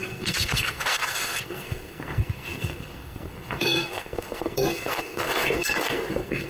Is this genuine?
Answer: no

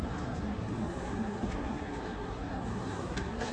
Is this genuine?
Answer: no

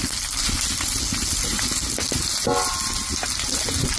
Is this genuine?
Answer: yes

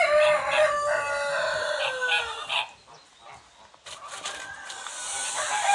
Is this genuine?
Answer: yes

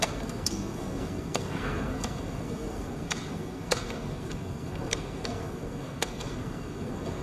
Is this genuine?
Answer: no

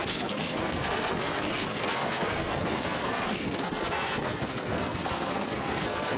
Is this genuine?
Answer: no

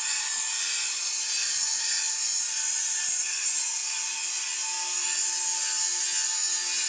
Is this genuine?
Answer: yes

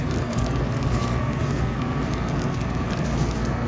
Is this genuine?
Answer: no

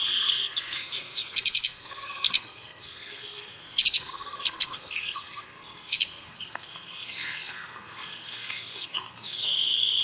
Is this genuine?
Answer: no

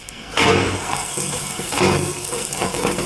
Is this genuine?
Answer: no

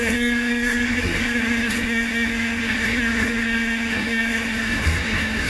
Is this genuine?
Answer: no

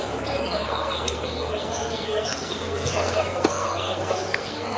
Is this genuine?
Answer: no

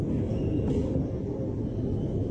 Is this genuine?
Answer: yes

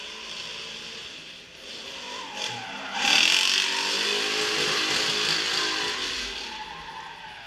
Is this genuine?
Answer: yes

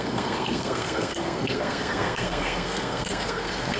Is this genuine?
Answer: no